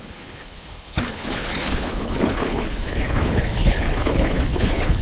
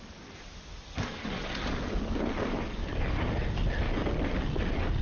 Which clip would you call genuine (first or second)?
second